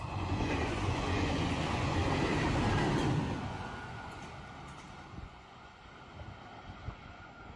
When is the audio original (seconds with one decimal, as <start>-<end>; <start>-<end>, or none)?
2.0-3.5; 4.2-5.1; 5.8-6.6